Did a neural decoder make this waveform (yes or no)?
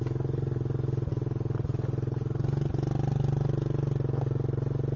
no